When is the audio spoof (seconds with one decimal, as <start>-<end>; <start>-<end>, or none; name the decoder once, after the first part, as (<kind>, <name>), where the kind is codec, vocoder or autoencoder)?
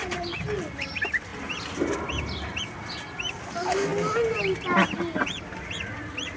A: 0.0-0.5 (vocoder, BigVGAN v2); 1.3-2.6